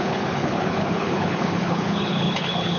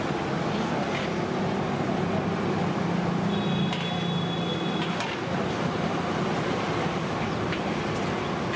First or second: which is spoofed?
first